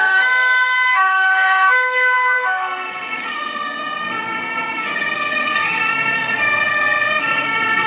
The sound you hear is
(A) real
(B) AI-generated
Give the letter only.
B